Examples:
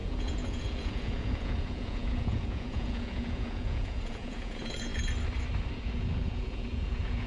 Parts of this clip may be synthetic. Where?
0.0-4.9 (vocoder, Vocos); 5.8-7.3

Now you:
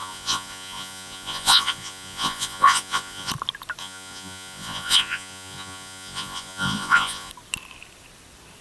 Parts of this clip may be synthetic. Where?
0.0-3.3 (vocoder, Vocos); 3.8-7.3

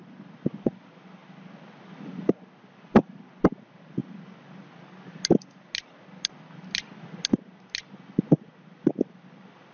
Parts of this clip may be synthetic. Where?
none